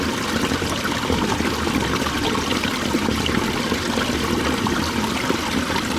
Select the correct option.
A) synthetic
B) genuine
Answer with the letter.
B